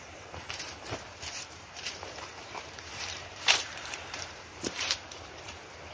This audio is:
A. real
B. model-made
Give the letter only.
B